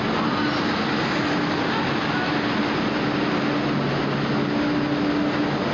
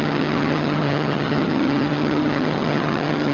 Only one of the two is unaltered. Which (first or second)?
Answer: first